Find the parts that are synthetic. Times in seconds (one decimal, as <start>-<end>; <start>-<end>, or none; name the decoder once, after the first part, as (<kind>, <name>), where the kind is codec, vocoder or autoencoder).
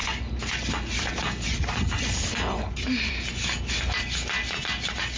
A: none